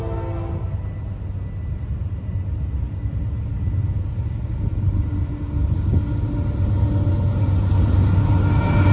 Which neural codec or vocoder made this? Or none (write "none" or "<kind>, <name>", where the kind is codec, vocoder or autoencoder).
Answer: none